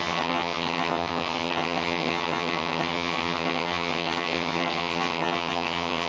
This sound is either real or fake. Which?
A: fake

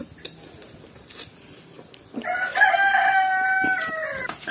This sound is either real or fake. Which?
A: real